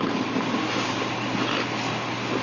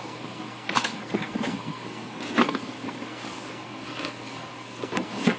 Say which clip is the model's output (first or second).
second